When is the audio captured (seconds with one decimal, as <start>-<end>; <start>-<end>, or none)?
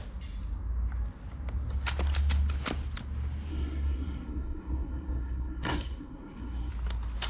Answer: 0.0-3.5; 6.7-7.3